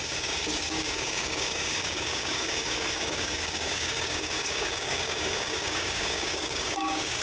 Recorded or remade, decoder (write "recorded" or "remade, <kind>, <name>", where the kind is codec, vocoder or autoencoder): remade, codec, DAC